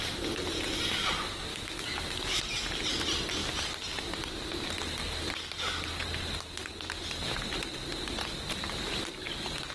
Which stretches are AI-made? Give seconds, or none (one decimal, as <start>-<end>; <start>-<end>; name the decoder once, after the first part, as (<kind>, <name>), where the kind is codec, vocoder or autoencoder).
1.5-2.4 (autoencoder, DAC-VAE)